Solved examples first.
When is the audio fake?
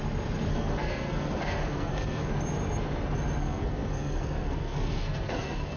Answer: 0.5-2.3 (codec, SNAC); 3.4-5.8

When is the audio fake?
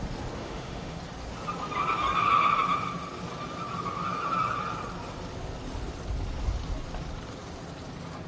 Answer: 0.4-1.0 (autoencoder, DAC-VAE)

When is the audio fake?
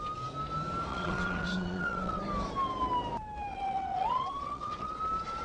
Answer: 0.9-2.2 (vocoder, WaveNeXt); 3.5-5.0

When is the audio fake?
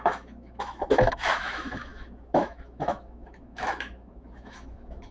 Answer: 0.0-5.1 (autoencoder, DAC-VAE)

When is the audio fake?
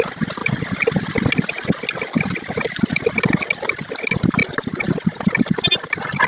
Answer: none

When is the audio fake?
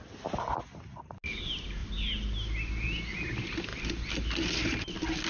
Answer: none